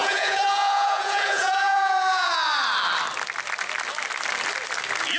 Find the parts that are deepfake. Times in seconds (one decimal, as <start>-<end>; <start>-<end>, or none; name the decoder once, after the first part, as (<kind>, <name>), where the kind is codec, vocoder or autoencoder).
0.0-2.3 (vocoder, Vocos)